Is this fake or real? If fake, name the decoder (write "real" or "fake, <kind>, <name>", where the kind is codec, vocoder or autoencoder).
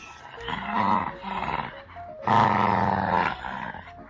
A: real